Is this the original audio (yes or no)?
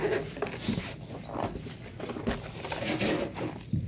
yes